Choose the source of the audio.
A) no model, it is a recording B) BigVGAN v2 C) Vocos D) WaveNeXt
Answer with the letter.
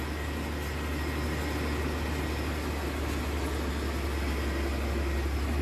A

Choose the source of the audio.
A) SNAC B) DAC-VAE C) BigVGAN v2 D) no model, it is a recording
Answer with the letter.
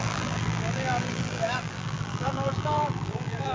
C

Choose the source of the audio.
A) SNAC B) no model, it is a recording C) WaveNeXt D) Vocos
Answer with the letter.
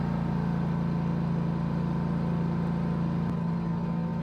B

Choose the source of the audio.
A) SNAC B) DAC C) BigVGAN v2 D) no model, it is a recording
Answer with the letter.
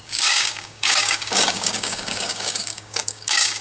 B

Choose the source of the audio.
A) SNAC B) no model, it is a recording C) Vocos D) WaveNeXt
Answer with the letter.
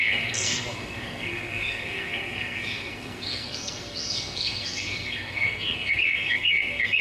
A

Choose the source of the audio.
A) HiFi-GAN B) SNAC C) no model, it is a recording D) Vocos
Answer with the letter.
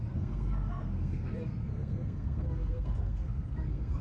B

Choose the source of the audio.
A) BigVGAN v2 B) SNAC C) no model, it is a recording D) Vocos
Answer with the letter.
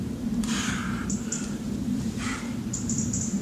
A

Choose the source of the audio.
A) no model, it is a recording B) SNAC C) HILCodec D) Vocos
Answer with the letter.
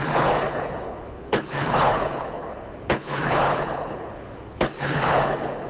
C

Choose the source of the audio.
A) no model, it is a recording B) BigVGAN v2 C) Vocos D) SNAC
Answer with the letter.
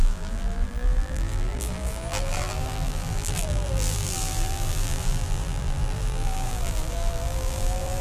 B